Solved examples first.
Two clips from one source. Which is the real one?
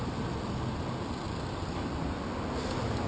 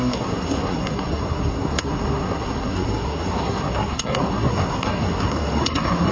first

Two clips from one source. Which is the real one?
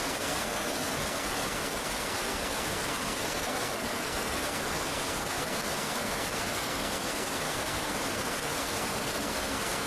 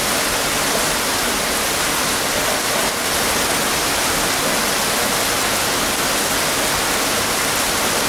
second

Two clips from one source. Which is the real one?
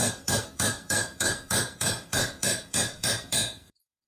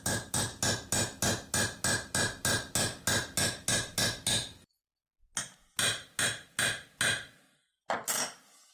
second